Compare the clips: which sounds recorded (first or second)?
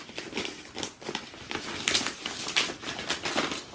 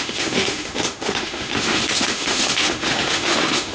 first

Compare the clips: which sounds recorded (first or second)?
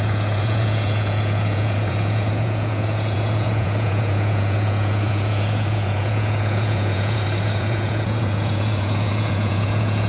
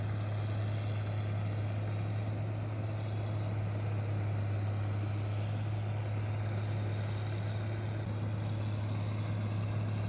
second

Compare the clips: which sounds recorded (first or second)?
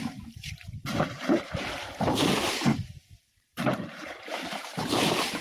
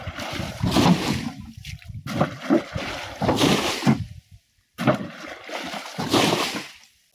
second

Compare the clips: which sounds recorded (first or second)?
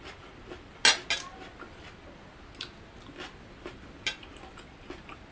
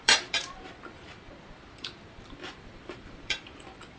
first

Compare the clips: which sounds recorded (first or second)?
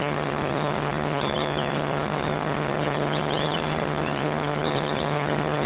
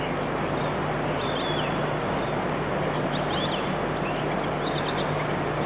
second